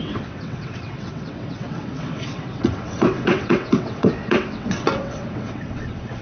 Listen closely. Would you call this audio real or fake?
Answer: fake